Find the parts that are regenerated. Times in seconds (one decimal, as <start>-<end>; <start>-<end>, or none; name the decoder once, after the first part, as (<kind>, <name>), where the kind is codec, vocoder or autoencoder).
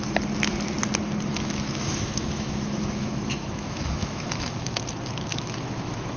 1.3-4.8 (autoencoder, DAC-VAE); 5.3-6.2